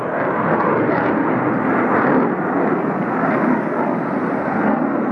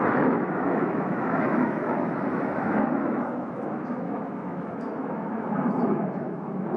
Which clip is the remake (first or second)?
second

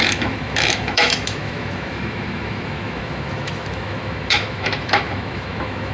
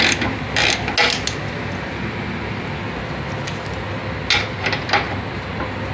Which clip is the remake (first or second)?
first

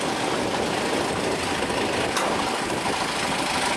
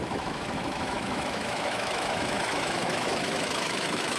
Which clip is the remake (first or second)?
second